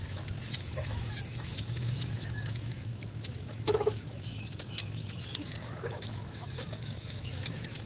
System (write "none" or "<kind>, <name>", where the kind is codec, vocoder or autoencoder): autoencoder, DAC-VAE